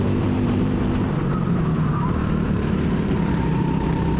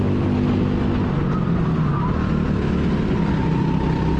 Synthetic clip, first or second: first